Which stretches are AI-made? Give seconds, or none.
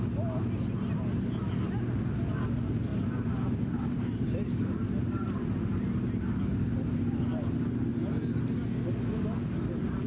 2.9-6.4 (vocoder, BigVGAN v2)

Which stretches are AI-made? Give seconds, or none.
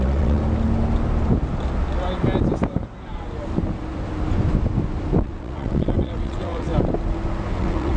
0.0-0.4 (vocoder, WaveNeXt); 5.2-6.7; 7.5-8.0